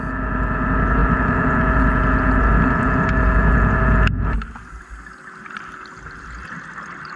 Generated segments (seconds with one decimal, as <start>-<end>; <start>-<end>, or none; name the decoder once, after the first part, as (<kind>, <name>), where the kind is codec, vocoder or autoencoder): none